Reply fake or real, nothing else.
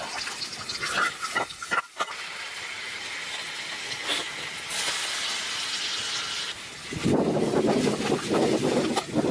real